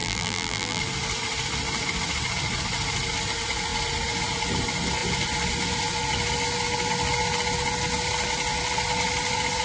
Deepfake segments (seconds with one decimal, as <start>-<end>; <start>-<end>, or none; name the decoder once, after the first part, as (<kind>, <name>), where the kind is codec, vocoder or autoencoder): 0.0-0.8 (vocoder, BigVGAN v2)